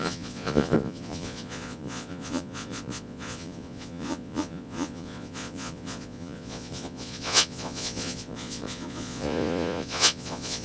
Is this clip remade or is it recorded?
remade